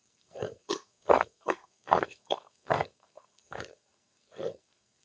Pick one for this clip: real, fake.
fake